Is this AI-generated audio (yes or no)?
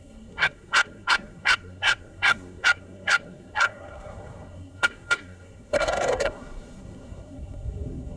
yes